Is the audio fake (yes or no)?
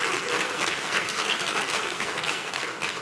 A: yes